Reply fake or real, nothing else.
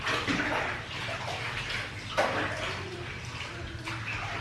real